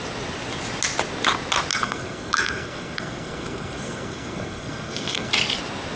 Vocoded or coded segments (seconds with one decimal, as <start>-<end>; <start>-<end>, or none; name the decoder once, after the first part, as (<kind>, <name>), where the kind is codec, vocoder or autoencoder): 1.7-5.3 (codec, SNAC)